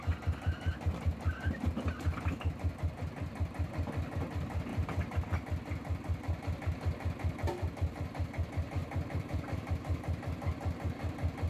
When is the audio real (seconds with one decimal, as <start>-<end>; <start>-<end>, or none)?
0.0-4.7; 5.3-8.8; 9.7-11.5